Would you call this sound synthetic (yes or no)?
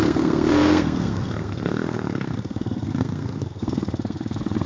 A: yes